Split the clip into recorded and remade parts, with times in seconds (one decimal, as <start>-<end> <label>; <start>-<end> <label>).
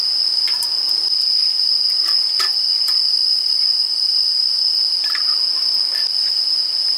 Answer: 0.0-3.0 recorded; 3.0-4.6 remade; 4.6-7.0 recorded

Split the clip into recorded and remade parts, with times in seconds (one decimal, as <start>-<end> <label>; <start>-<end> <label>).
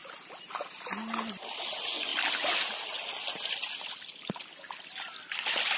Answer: 0.0-5.8 recorded